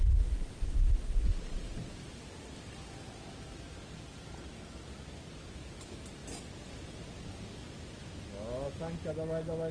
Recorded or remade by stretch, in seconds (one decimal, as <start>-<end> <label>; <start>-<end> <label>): 0.0-9.7 recorded